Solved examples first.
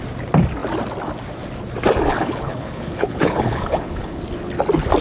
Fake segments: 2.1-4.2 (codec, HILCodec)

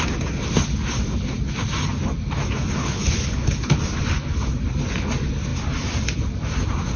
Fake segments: 2.8-3.8 (codec, HILCodec)

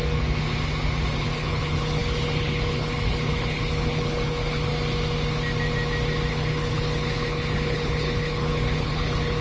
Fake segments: 1.2-4.7 (codec, HILCodec); 6.3-9.4

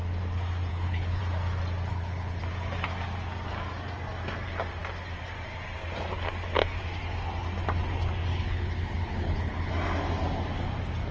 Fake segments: 0.7-1.2 (codec, HILCodec); 1.9-2.4; 8.3-9.7

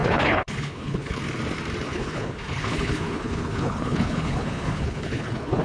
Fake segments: 0.0-1.2 (codec, HILCodec); 1.9-5.6